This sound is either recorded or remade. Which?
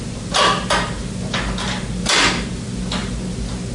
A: recorded